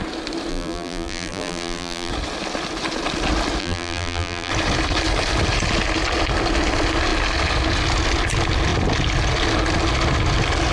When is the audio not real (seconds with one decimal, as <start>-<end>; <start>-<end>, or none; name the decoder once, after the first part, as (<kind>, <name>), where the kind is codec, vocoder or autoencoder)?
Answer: 0.5-2.1 (vocoder, BigVGAN v2); 3.6-4.5